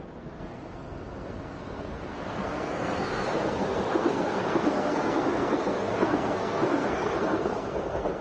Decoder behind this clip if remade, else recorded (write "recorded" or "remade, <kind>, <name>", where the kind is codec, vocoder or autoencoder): remade, codec, SNAC